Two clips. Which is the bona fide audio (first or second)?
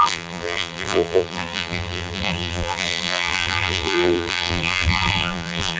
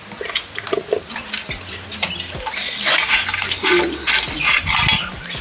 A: second